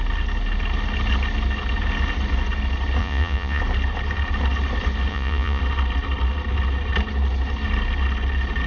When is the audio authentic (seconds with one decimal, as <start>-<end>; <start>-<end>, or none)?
0.0-3.0; 3.6-5.1; 5.6-8.7